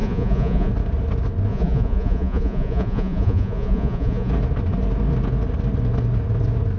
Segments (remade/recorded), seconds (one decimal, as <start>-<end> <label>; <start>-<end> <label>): 0.0-0.7 remade; 0.7-1.5 recorded; 1.5-4.3 remade; 4.3-6.8 recorded